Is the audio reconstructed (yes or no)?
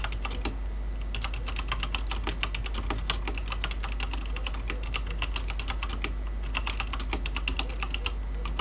no